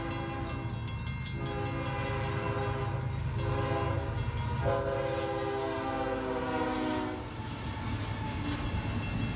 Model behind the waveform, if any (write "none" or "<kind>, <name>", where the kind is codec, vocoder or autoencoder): none